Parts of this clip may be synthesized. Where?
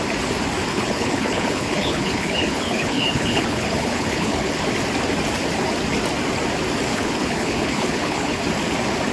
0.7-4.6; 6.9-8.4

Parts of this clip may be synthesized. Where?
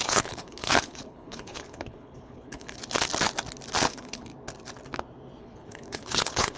0.0-2.8; 3.9-4.3; 5.4-6.6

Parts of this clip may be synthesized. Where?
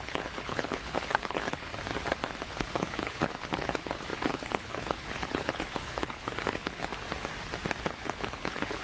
0.0-1.7; 2.3-6.9; 7.8-8.8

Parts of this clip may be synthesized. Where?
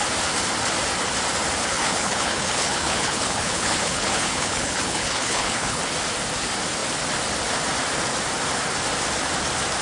1.6-5.8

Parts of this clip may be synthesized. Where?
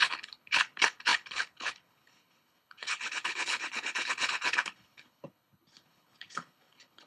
0.0-7.1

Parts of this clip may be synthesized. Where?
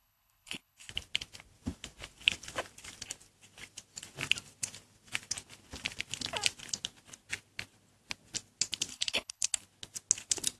0.0-0.9; 8.9-9.6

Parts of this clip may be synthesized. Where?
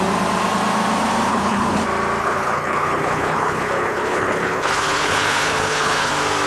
1.3-1.8; 2.2-6.1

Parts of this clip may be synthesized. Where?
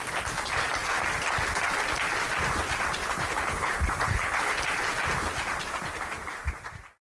3.0-4.6